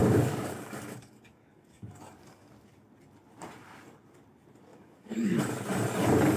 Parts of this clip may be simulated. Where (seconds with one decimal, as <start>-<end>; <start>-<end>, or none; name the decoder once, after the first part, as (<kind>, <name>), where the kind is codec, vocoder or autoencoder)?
0.0-2.5 (codec, DAC); 4.7-5.4